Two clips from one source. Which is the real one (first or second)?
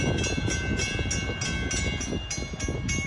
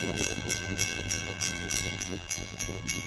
first